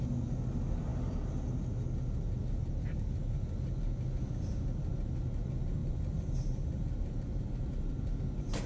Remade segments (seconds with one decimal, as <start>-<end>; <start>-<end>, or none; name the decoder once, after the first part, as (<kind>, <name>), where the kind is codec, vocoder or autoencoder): 5.8-8.2 (vocoder, BigVGAN v2)